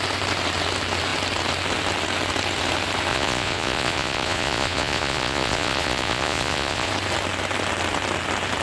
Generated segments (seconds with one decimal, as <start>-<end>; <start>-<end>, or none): 3.1-6.9